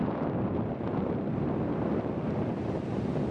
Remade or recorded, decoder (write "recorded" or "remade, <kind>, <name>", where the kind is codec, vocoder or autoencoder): recorded